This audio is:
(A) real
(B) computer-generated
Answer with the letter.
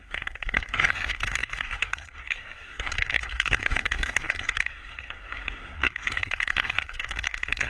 B